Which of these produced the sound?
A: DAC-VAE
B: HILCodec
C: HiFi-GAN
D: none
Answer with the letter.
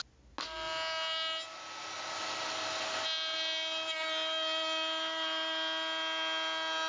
D